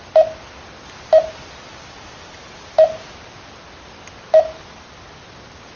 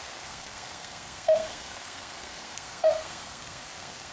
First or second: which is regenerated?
second